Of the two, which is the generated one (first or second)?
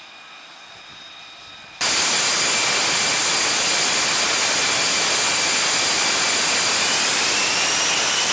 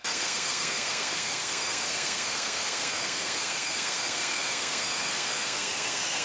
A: second